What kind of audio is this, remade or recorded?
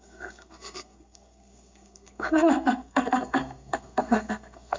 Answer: remade